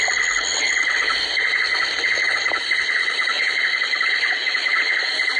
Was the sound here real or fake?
real